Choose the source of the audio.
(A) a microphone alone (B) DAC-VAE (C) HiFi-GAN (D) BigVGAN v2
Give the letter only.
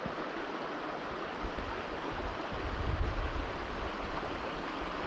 A